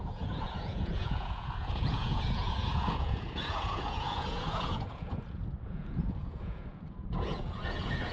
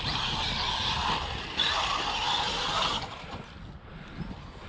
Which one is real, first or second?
second